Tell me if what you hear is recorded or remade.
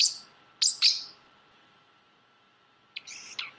recorded